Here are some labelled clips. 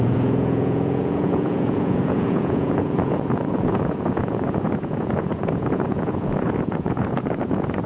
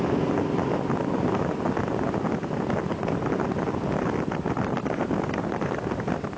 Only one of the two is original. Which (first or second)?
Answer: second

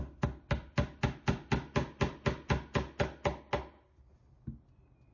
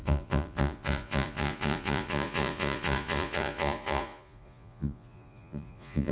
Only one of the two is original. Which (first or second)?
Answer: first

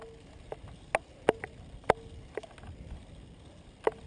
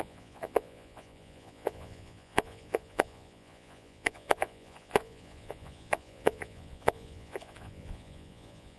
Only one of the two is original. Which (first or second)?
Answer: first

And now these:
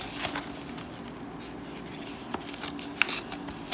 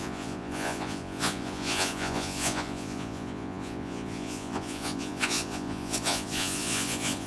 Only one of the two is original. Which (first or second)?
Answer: first